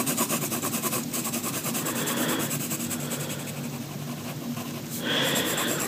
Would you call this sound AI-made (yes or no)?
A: no